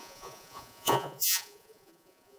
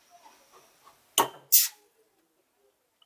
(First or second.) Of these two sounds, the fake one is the first